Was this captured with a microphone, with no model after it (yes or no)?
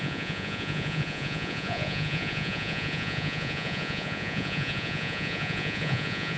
no